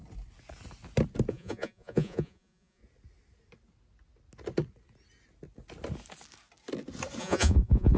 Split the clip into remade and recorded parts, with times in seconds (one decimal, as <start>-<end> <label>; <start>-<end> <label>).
0.0-1.3 recorded; 1.3-2.8 remade; 2.8-7.2 recorded; 7.2-8.0 remade